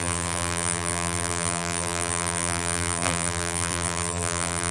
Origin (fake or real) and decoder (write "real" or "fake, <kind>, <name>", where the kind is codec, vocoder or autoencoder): fake, vocoder, BigVGAN v2